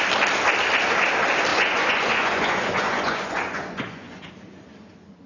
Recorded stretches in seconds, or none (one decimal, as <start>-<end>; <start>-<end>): 0.0-1.5; 4.3-5.3